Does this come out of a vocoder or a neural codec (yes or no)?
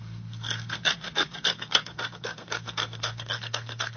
yes